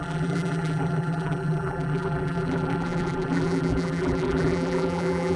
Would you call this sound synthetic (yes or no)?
yes